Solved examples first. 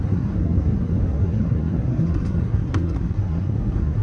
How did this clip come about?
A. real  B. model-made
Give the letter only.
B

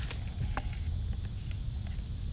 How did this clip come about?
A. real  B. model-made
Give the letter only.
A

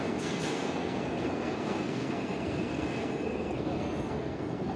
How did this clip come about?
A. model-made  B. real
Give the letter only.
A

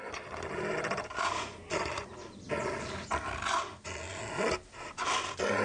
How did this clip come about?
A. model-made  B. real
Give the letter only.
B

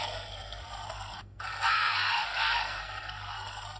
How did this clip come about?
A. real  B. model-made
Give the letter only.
B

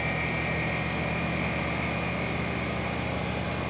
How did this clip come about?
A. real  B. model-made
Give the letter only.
A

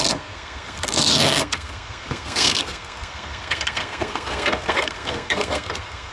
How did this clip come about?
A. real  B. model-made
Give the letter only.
B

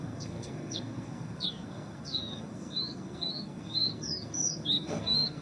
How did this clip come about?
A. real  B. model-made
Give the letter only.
B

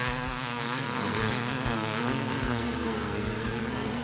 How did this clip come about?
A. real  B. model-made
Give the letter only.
B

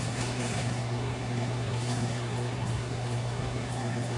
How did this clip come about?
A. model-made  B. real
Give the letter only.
A